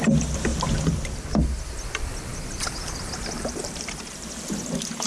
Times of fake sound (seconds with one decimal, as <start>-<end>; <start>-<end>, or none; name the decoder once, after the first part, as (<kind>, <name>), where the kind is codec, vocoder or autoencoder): 0.5-1.4 (vocoder, BigVGAN v2); 2.3-4.0